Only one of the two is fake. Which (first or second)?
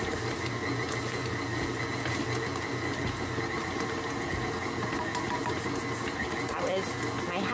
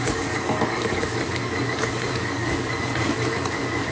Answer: second